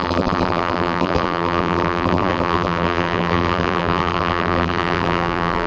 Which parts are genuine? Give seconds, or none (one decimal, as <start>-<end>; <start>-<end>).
none